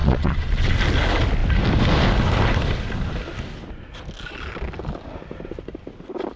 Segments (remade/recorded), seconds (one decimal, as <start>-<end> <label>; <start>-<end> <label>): 0.0-0.8 remade; 0.8-6.4 recorded